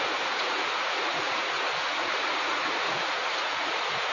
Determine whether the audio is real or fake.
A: fake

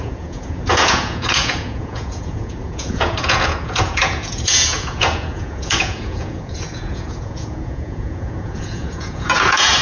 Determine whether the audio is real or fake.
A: fake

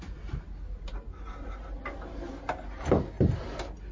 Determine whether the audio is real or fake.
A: real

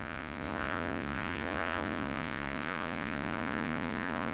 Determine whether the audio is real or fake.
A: fake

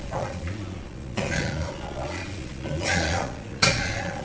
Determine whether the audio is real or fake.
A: fake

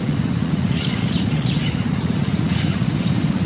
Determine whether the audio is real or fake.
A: fake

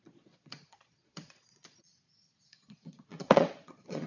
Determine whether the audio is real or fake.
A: fake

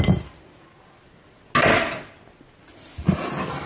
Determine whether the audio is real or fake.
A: real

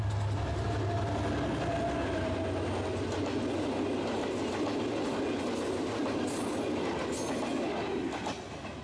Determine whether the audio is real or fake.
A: real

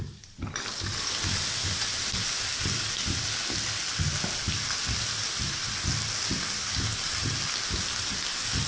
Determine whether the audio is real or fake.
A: real